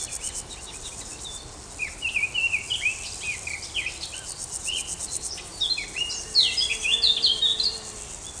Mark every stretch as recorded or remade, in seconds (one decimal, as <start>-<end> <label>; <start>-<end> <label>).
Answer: 0.0-8.4 recorded